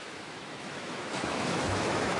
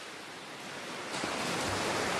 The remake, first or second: first